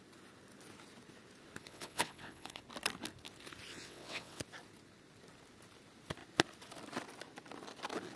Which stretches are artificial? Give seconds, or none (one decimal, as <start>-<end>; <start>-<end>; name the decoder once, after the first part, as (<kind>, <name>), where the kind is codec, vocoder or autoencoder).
1.6-2.6 (vocoder, WaveNeXt); 3.7-4.4